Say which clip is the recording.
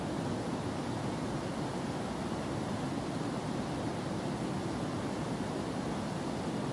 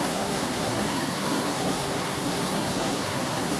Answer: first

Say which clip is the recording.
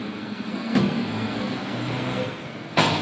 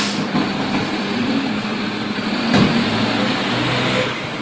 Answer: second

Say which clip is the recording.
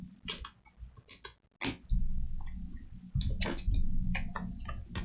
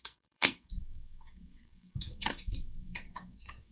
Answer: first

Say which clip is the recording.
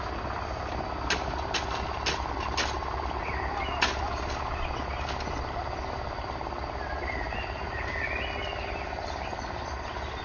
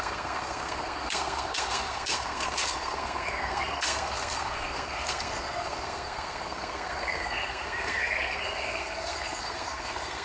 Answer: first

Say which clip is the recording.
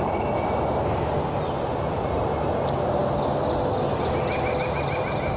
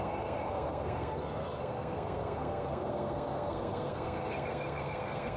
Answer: first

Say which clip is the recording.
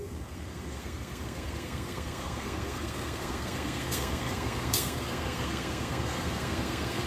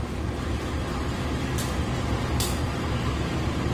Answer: second